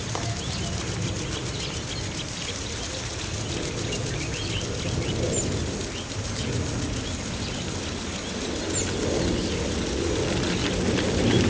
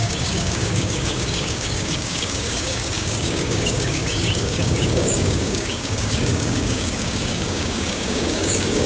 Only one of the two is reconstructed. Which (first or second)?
second